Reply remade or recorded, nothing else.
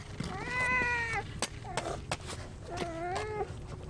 recorded